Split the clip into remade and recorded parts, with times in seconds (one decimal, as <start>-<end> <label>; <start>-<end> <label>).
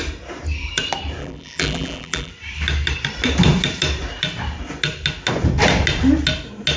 0.0-1.2 recorded; 1.2-2.3 remade; 2.3-6.8 recorded